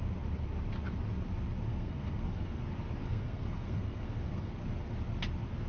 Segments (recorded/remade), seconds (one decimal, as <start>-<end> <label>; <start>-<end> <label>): 0.0-1.7 recorded; 1.7-2.6 remade; 2.6-3.0 recorded; 3.0-4.5 remade; 4.5-5.7 recorded